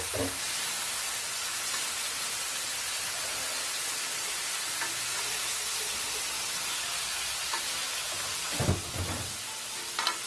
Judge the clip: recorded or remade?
recorded